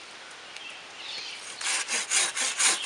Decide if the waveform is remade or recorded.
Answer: recorded